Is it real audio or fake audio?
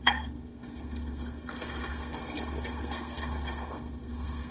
fake